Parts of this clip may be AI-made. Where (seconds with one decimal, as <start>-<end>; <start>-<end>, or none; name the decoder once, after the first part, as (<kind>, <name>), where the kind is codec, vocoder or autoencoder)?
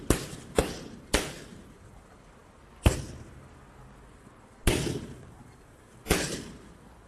none